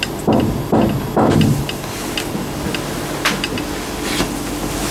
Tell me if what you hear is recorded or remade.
recorded